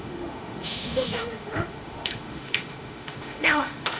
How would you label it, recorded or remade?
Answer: remade